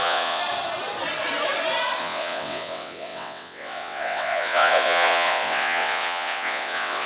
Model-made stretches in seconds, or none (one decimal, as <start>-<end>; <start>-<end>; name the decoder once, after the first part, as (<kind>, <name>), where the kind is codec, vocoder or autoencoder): 0.0-0.4 (vocoder, WaveNeXt); 2.0-7.1